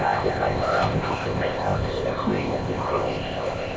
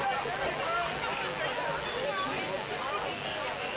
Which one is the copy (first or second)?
first